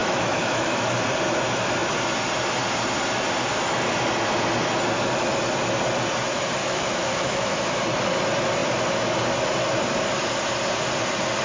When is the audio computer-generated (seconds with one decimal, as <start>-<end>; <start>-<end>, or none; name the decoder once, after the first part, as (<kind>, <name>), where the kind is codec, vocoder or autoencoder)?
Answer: 0.0-0.9 (autoencoder, DAC-VAE); 6.6-7.7

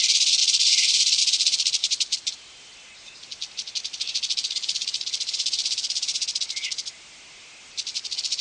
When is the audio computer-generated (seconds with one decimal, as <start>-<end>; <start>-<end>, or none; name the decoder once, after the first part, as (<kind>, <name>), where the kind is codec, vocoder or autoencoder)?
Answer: 0.4-1.2 (vocoder, BigVGAN v2); 1.8-2.4